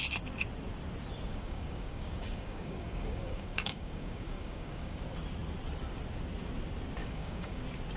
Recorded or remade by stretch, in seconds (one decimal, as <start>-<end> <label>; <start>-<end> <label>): 0.0-1.3 recorded; 1.3-5.0 remade; 5.0-7.0 recorded; 7.0-7.6 remade; 7.6-8.0 recorded